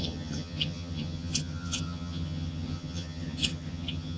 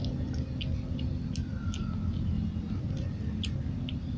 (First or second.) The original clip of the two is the second